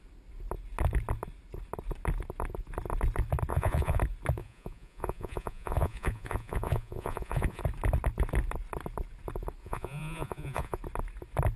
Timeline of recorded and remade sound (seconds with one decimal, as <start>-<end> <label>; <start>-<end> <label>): 0.0-3.5 recorded; 3.5-4.0 remade; 4.0-4.4 recorded; 4.4-7.6 remade; 7.6-9.6 recorded; 9.6-10.8 remade; 10.8-11.6 recorded